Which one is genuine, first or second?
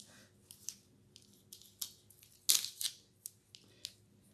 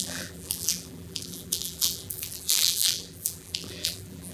first